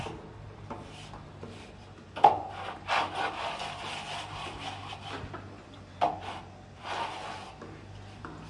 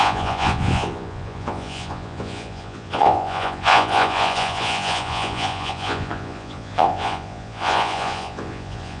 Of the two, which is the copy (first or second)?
second